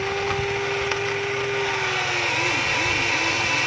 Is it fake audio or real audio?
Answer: real